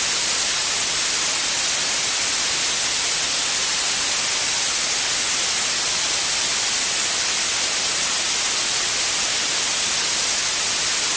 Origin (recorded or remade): recorded